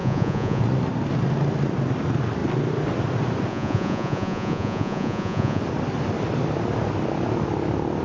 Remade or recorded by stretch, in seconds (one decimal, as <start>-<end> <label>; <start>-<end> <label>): 0.0-0.6 remade; 0.6-3.5 recorded; 3.5-5.6 remade; 5.6-8.0 recorded